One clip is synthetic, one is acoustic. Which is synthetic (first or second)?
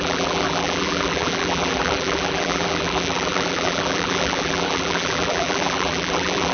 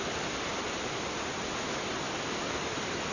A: first